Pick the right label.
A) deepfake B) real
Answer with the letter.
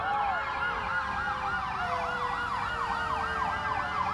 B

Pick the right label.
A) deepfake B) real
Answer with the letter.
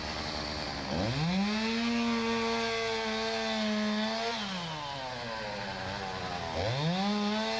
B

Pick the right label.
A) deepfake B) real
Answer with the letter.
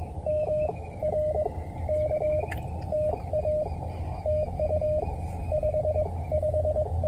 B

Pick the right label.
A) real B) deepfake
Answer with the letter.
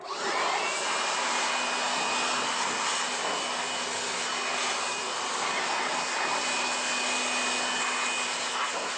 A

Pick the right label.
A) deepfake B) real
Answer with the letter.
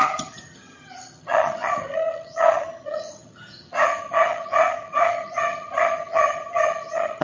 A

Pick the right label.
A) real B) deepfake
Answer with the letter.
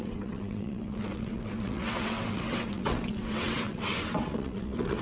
B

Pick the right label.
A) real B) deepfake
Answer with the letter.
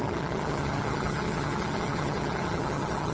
B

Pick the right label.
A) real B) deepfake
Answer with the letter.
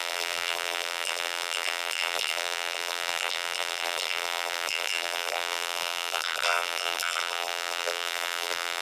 B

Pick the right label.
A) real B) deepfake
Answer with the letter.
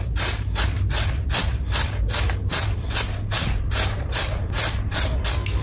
A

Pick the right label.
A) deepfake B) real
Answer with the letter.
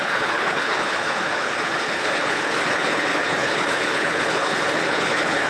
A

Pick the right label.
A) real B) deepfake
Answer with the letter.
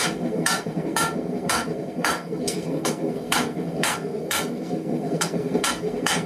B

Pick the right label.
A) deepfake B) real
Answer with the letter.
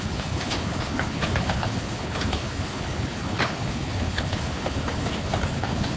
A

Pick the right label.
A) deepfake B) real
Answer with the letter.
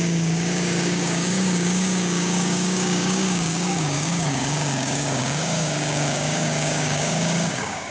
A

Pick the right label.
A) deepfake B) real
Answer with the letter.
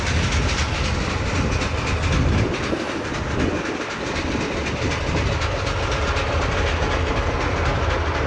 B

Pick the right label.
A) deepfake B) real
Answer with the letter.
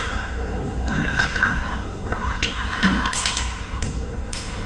A